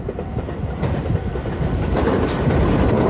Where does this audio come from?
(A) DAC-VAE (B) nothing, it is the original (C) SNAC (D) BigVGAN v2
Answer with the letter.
D